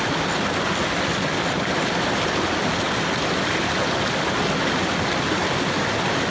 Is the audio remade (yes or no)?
no